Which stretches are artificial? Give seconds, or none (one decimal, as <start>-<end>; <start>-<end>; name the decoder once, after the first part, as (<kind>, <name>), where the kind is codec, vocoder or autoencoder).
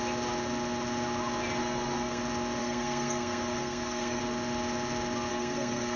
1.6-2.2 (codec, SNAC); 2.6-4.2; 5.3-6.0